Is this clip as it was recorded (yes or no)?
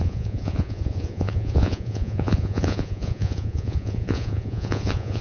no